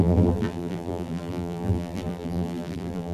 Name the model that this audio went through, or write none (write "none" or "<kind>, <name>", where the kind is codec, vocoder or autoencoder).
vocoder, BigVGAN v2